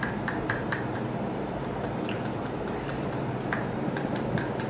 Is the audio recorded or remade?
remade